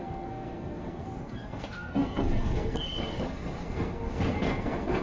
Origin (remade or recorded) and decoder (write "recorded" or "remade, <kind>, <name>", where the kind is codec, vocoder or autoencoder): remade, codec, SNAC